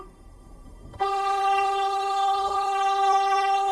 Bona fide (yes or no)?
no